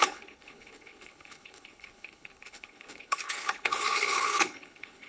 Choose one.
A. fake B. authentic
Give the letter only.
A